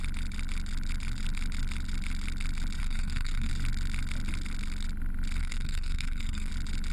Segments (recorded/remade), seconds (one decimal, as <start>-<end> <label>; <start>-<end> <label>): 0.0-2.8 recorded; 2.8-3.5 remade; 3.5-5.4 recorded; 5.4-6.5 remade; 6.5-6.9 recorded